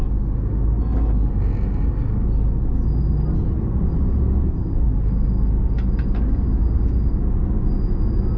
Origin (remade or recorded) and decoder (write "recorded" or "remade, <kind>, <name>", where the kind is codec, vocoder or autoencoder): recorded